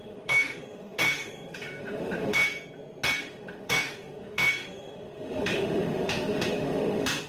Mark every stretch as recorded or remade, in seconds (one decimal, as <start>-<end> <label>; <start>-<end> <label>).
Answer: 0.0-2.4 remade; 2.4-3.2 recorded; 3.2-7.3 remade